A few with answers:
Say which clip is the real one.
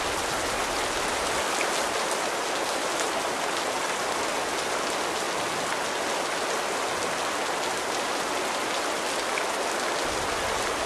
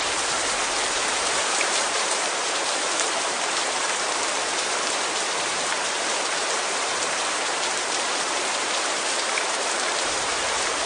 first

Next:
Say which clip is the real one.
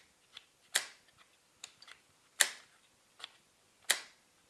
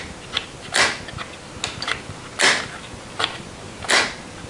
second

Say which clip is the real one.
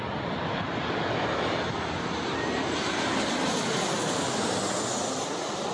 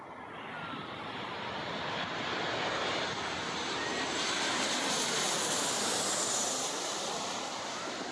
first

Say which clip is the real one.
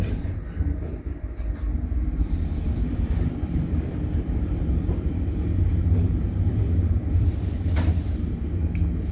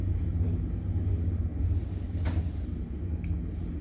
second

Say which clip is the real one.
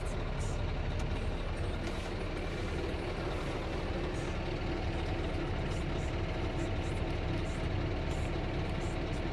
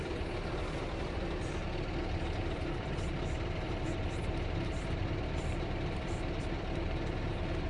first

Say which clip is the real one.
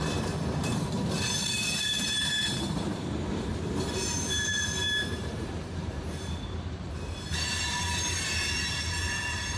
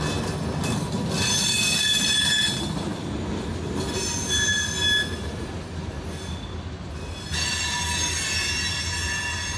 second